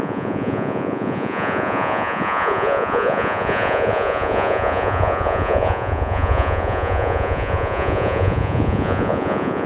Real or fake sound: fake